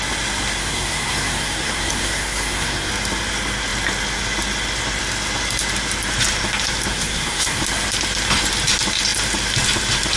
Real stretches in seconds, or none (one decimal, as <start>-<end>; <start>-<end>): 0.0-0.6; 2.9-6.9; 7.6-10.2